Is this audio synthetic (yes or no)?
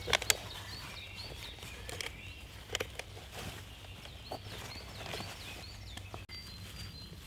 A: no